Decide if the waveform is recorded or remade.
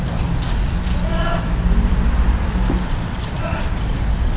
remade